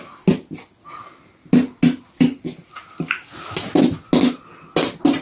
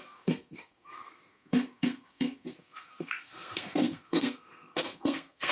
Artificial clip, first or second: second